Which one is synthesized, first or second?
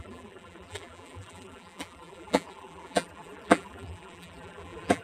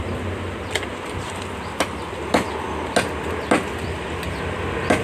first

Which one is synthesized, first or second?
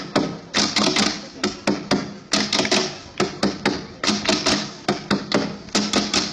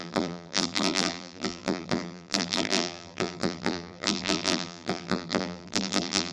second